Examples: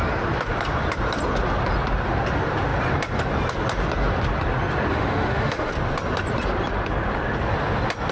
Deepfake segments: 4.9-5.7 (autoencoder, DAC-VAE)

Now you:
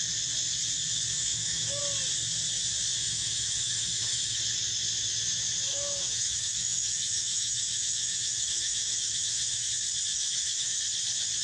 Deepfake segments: 1.3-1.8 (autoencoder, DAC-VAE); 3.0-4.4; 5.7-9.7; 10.1-10.8